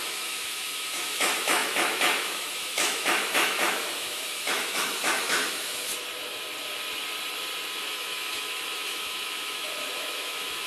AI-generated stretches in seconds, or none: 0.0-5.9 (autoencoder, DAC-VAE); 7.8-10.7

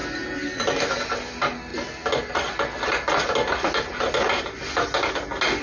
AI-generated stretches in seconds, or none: none

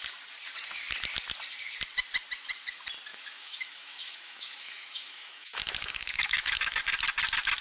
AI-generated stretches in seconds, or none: 3.1-6.8 (autoencoder, DAC-VAE)

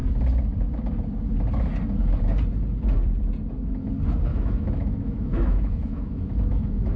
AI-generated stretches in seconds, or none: 4.3-7.0 (autoencoder, DAC-VAE)

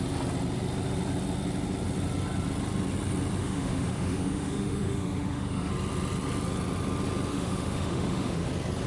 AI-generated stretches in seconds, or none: 3.4-5.7 (autoencoder, DAC-VAE); 7.3-8.5

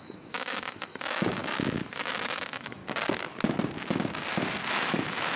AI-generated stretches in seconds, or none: 0.0-2.8 (autoencoder, DAC-VAE); 4.7-5.4

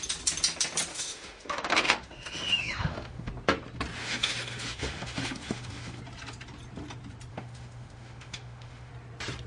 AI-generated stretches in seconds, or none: 0.9-3.3 (autoencoder, DAC-VAE); 4.0-6.0; 7.3-8.9